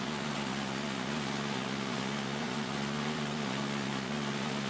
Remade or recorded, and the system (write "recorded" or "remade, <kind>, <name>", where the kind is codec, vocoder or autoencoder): remade, vocoder, Vocos